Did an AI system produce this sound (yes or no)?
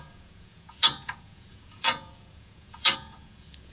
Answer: yes